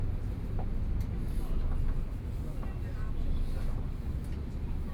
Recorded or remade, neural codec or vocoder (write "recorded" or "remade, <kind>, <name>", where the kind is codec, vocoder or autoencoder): recorded